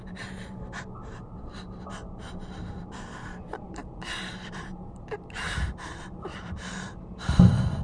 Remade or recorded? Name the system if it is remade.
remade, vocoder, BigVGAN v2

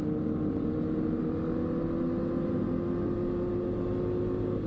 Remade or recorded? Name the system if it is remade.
recorded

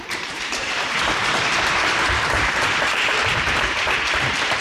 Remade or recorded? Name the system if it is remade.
remade, vocoder, BigVGAN v2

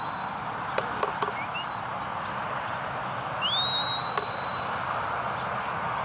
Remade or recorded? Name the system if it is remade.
recorded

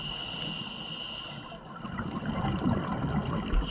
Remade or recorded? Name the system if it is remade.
recorded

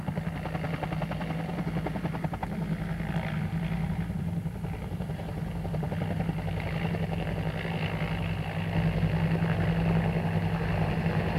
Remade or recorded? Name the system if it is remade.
recorded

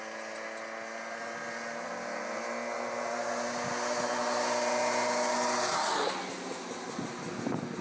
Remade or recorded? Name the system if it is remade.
recorded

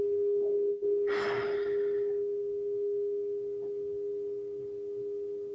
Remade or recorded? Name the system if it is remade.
recorded